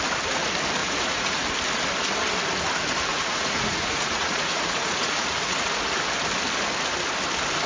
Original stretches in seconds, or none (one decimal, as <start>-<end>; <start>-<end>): 0.0-0.8; 1.4-3.1; 5.7-7.7